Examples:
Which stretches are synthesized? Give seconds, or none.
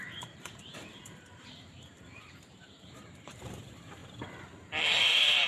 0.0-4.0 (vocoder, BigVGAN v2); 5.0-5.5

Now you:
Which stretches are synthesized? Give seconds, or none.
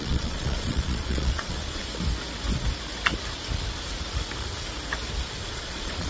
0.0-1.8 (vocoder, Vocos); 5.5-6.1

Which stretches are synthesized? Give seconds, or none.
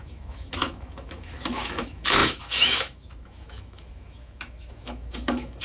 0.0-5.6 (autoencoder, DAC-VAE)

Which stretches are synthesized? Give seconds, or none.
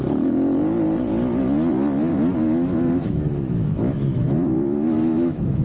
2.1-5.6 (autoencoder, DAC-VAE)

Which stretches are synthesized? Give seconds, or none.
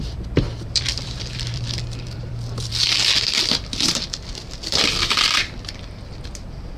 0.0-2.7 (vocoder, BigVGAN v2); 3.4-6.8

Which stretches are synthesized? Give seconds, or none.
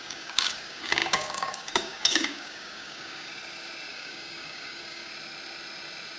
0.0-3.3 (codec, DAC); 3.9-5.1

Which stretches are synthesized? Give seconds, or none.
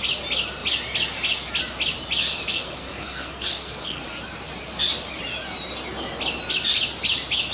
2.3-4.0 (codec, SNAC)